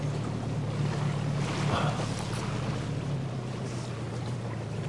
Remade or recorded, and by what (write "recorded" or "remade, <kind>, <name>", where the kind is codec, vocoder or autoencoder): recorded